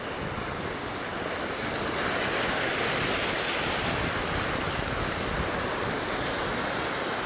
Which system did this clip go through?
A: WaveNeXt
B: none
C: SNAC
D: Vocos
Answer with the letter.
B